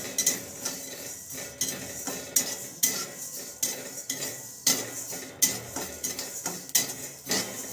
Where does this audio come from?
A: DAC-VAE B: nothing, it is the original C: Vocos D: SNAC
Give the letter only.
B